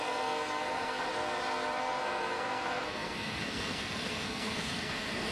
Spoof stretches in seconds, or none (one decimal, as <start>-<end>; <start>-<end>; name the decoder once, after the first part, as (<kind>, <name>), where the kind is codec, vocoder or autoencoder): 0.0-1.1 (codec, SNAC); 1.8-5.3